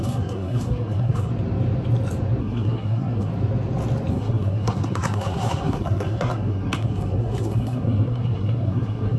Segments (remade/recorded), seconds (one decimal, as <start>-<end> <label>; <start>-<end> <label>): 0.0-1.3 remade; 1.3-2.4 recorded; 2.4-3.3 remade; 3.3-4.1 recorded; 4.1-9.2 remade